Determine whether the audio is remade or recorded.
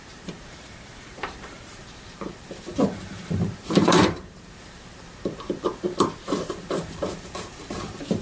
remade